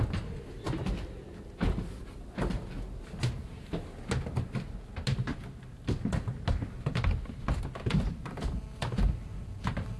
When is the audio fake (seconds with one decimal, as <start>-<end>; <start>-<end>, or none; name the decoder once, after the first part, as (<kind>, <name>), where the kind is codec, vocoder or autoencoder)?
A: none